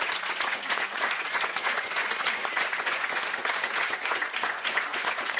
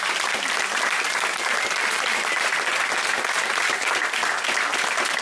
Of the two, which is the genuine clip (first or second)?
second